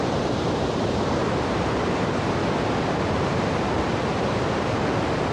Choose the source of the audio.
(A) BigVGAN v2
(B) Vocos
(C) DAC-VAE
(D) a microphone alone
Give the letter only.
A